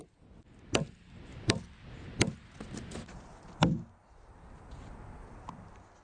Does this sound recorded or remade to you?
recorded